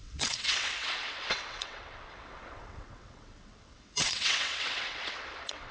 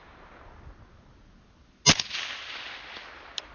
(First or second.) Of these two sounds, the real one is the second